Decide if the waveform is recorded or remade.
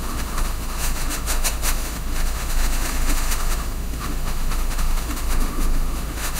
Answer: remade